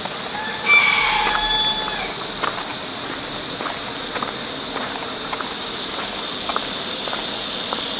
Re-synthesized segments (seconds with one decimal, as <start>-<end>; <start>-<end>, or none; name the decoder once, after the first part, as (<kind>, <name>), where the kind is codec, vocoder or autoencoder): none